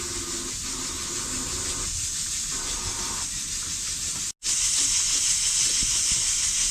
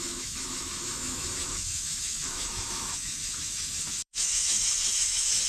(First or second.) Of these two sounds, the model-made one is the second